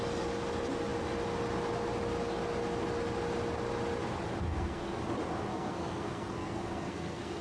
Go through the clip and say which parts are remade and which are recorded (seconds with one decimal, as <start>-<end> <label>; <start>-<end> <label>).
0.0-4.5 recorded; 4.5-5.0 remade; 5.0-5.5 recorded; 5.5-7.4 remade